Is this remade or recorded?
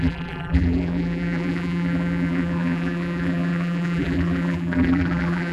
remade